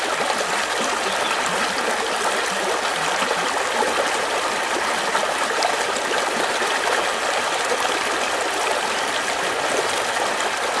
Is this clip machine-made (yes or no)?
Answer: no